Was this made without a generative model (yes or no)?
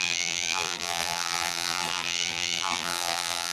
no